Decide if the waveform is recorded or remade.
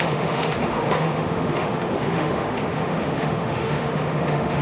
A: remade